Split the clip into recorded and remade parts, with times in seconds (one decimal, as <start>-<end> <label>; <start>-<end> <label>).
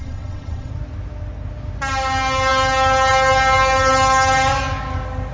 0.0-0.7 remade; 0.7-5.3 recorded